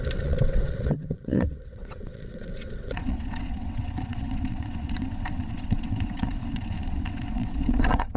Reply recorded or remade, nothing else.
remade